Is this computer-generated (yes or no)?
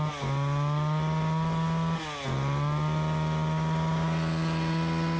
no